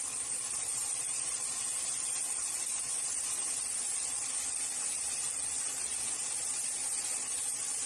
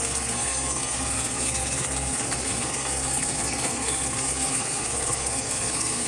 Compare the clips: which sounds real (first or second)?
first